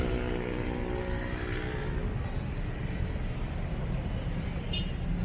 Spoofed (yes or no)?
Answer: no